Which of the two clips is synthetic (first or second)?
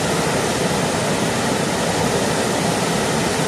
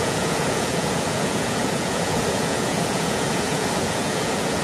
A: second